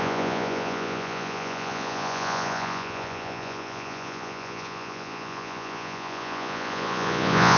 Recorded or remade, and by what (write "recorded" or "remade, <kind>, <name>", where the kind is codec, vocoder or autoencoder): remade, vocoder, Vocos